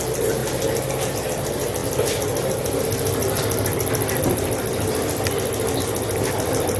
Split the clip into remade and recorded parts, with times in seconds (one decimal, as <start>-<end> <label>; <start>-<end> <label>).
0.0-6.8 recorded